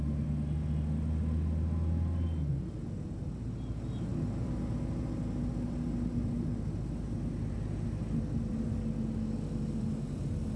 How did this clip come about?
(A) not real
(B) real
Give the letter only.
B